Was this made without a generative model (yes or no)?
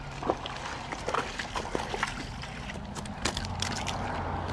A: yes